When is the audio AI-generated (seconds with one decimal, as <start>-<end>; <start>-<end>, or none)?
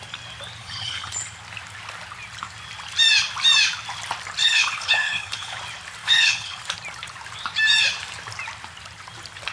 0.6-1.1; 4.4-5.6; 6.0-6.6